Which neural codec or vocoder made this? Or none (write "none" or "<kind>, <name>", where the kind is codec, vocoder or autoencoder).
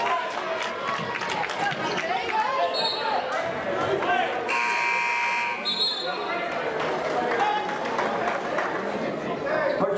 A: none